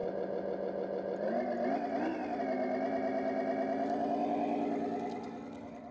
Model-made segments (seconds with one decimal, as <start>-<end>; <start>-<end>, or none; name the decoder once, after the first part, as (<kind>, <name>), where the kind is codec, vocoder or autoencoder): none